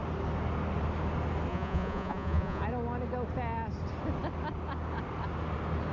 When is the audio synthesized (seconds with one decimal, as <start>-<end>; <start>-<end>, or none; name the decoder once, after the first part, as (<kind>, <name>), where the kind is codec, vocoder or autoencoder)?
1.5-2.6 (vocoder, Vocos)